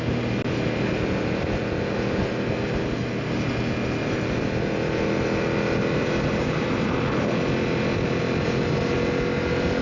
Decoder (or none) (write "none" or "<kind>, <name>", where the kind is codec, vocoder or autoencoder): none